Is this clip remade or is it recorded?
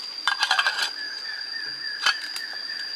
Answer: recorded